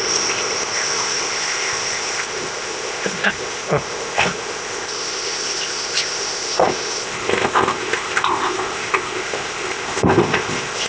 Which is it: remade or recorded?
remade